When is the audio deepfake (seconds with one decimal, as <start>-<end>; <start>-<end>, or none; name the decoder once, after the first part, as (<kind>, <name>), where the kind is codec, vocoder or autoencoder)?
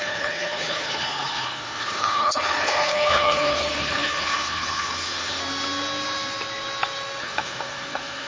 0.0-5.4 (codec, HILCodec); 7.2-8.3